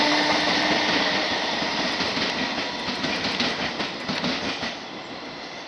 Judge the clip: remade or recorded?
recorded